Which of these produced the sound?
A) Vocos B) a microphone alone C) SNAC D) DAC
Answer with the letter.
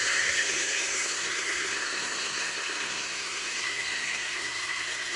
C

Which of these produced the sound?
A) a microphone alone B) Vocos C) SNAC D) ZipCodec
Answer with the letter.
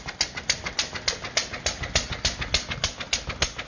A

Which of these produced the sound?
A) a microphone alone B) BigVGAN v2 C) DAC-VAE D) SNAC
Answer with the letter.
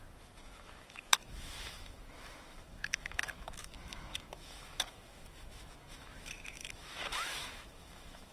C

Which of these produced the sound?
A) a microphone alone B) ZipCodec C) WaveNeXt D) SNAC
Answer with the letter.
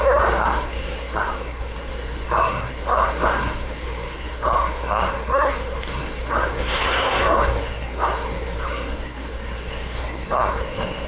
D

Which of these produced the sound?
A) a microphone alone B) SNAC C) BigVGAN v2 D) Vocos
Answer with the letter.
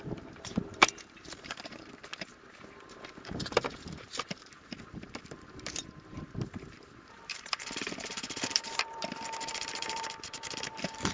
C